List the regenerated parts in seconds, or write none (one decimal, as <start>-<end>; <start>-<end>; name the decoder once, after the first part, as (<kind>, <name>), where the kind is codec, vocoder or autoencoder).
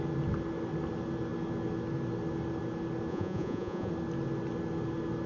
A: 3.1-3.9 (vocoder, Vocos)